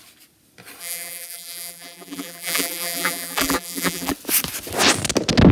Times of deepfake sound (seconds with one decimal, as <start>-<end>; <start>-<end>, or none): 0.8-4.1